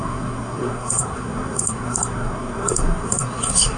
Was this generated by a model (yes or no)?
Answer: yes